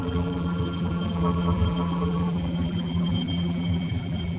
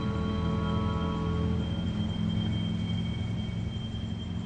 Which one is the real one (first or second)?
second